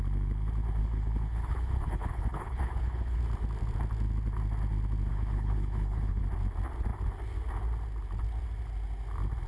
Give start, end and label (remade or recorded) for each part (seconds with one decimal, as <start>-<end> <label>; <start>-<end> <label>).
0.0-0.8 recorded; 0.8-3.2 remade; 3.2-5.1 recorded; 5.1-6.2 remade; 6.2-9.5 recorded